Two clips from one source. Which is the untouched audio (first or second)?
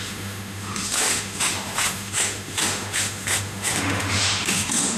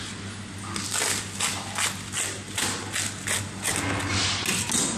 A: second